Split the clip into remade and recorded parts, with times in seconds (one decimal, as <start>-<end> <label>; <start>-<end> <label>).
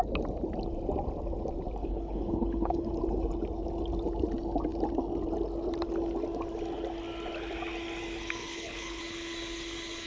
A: 0.0-1.8 recorded; 1.8-2.9 remade; 2.9-8.4 recorded; 8.4-9.0 remade; 9.0-10.1 recorded